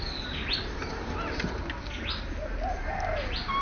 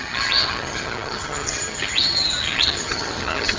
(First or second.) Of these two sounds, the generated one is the second